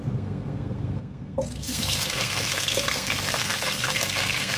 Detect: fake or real fake